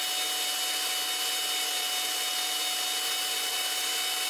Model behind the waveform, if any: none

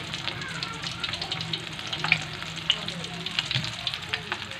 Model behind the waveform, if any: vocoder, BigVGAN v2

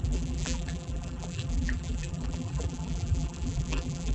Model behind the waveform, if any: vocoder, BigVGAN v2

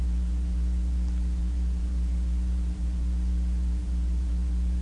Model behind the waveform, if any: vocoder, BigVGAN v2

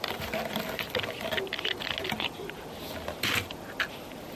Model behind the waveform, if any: none